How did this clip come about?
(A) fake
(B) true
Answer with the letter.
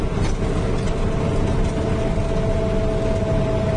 B